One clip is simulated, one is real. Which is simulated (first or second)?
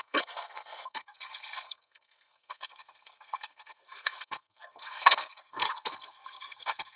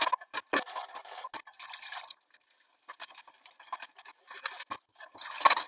first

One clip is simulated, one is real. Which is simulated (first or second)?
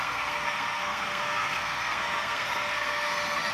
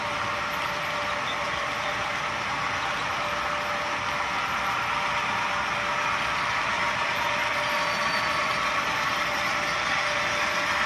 first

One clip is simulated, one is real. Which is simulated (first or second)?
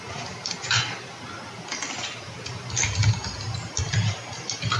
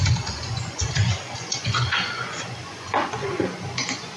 second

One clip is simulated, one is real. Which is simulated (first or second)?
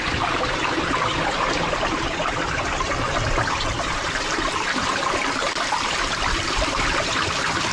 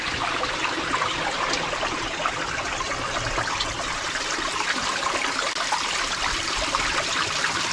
first